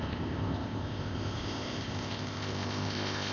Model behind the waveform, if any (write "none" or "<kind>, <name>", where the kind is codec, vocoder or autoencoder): codec, ZipCodec